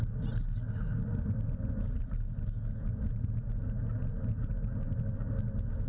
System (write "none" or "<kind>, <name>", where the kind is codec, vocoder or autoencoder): none